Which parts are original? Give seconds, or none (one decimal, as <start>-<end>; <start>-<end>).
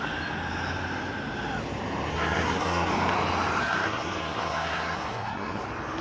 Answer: 0.0-2.1; 2.9-3.6; 5.6-6.0